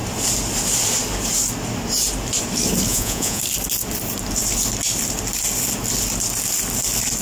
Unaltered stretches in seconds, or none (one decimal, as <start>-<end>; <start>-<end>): 0.0-2.9; 3.4-7.2